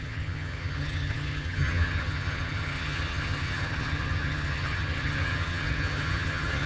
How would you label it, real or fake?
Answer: fake